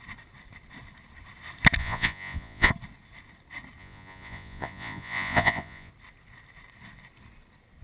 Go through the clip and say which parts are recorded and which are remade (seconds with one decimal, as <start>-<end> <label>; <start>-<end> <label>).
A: 0.0-1.8 recorded; 1.8-2.7 remade; 2.7-3.8 recorded; 3.8-5.9 remade; 5.9-7.8 recorded